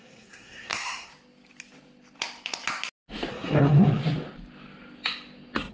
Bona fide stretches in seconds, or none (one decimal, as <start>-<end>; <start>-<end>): 1.1-3.3; 4.0-5.7